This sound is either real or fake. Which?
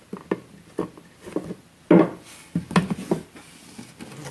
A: real